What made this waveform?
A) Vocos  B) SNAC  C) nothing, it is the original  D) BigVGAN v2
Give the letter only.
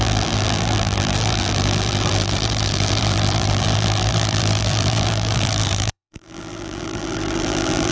D